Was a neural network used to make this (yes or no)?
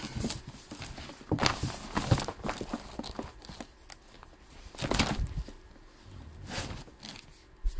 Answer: no